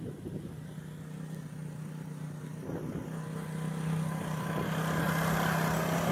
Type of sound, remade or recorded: recorded